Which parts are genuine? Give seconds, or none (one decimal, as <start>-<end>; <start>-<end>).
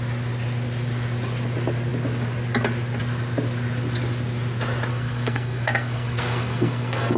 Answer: 0.0-4.9